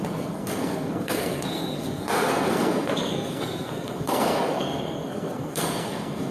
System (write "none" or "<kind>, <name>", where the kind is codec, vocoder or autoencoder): codec, SNAC